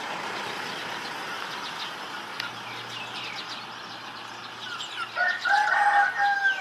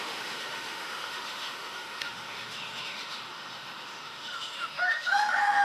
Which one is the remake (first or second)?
second